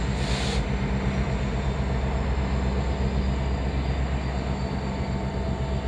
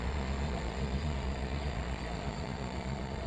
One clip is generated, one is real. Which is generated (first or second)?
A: second